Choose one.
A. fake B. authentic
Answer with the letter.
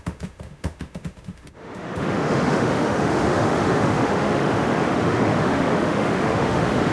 A